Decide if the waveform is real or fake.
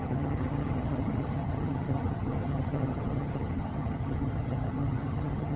fake